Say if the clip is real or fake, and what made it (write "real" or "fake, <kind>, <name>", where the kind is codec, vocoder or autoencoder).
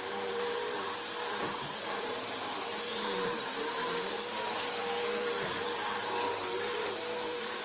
fake, vocoder, BigVGAN v2